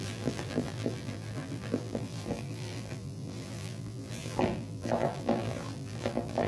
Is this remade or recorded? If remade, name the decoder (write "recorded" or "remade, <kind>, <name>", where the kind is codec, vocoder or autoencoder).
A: remade, vocoder, BigVGAN v2